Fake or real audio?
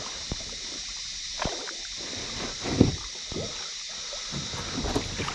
real